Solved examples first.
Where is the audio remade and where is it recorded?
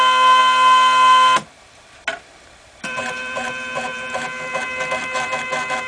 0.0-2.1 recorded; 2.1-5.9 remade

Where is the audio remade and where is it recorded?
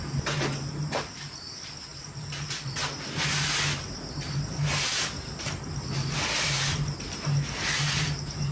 0.0-1.9 recorded; 1.9-3.3 remade; 3.3-8.5 recorded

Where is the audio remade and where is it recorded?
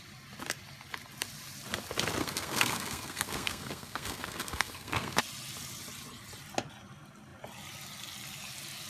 0.0-2.2 recorded; 2.2-5.2 remade; 5.2-8.9 recorded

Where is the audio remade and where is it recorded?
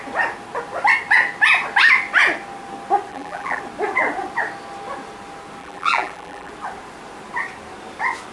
0.0-3.1 recorded; 3.1-3.6 remade; 3.6-5.6 recorded; 5.6-6.5 remade; 6.5-8.3 recorded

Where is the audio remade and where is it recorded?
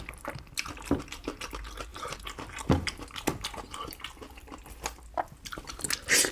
0.0-6.3 recorded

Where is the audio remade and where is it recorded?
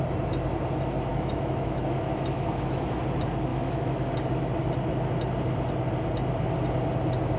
0.0-1.1 recorded; 1.1-3.0 remade; 3.0-3.5 recorded; 3.5-4.1 remade; 4.1-7.4 recorded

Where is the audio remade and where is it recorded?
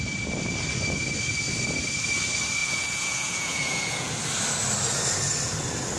0.0-2.6 recorded; 2.6-4.1 remade; 4.1-6.0 recorded